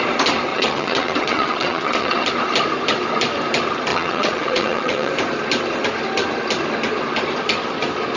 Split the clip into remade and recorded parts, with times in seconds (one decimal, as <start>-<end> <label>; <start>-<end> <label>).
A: 0.0-0.5 recorded; 0.5-2.3 remade; 2.3-3.9 recorded; 3.9-5.1 remade; 5.1-8.2 recorded